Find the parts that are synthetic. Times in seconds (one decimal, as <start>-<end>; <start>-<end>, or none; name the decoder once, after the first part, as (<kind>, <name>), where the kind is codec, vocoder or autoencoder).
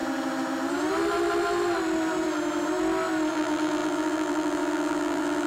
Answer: 3.3-5.5 (vocoder, BigVGAN v2)